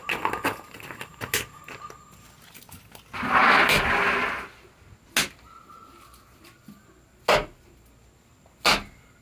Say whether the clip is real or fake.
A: real